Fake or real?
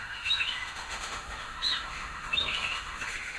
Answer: fake